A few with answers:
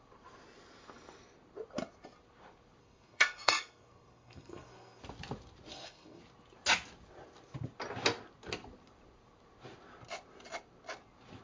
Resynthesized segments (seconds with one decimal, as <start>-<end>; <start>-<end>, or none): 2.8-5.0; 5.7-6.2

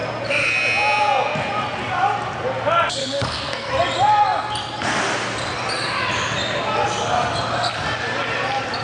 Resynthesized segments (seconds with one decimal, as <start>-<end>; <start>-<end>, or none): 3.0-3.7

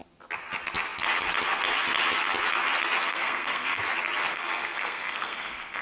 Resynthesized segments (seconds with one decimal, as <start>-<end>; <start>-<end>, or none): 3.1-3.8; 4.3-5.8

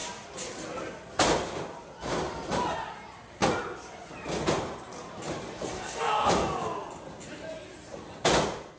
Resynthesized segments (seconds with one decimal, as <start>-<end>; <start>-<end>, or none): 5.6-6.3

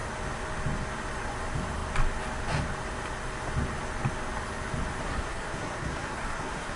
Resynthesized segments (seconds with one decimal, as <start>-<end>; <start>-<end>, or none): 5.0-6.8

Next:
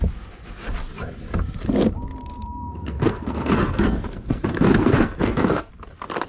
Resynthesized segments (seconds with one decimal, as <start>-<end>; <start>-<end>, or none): 2.2-5.7